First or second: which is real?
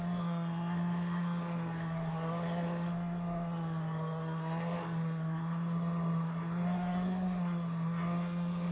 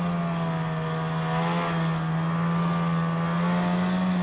second